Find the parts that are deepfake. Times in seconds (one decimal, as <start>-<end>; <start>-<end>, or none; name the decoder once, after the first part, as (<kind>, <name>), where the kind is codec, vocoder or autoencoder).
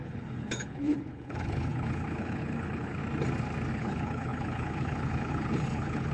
0.0-3.0 (codec, HILCodec); 3.7-6.1